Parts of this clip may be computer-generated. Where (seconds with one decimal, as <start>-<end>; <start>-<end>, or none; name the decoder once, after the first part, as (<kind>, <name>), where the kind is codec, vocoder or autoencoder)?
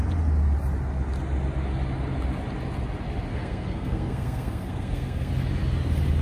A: 3.3-5.3 (codec, SNAC)